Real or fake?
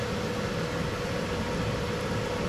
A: real